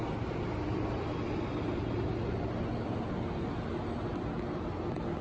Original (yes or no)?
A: yes